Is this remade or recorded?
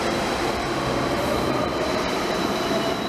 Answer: remade